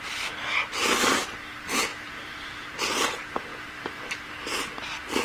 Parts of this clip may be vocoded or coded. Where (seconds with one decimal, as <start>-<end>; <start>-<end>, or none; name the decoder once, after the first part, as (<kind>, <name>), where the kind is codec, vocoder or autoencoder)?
1.9-2.8 (vocoder, BigVGAN v2); 3.5-4.2